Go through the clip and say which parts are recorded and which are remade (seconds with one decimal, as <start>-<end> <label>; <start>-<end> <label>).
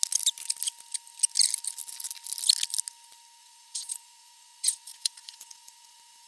0.0-3.4 recorded; 3.4-6.3 remade